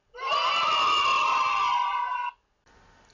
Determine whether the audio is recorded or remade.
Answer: recorded